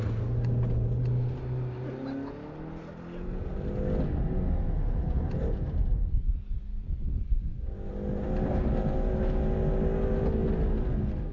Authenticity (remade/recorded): recorded